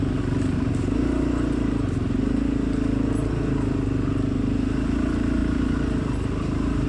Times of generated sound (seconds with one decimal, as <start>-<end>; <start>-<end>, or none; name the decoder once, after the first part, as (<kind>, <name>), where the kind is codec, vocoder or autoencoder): 5.4-6.9 (vocoder, BigVGAN v2)